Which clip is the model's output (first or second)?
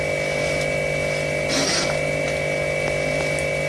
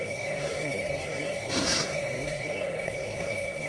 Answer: second